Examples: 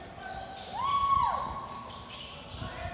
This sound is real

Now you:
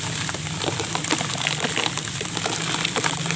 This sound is real